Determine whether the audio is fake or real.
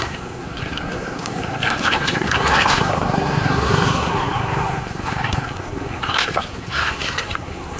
fake